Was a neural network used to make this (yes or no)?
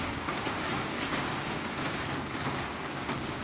yes